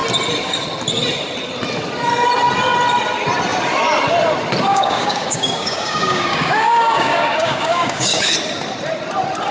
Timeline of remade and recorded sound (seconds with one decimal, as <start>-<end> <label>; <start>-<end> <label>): 0.0-4.7 recorded; 4.7-8.3 remade; 8.3-9.5 recorded